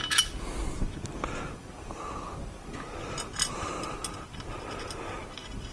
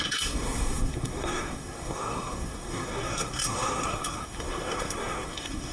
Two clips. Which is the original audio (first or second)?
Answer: first